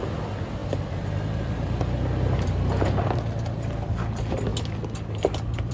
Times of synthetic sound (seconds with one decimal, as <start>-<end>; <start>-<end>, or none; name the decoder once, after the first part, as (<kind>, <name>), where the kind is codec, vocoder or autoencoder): none